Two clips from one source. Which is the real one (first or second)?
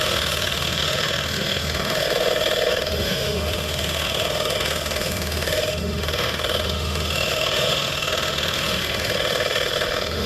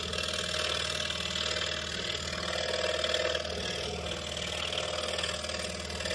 second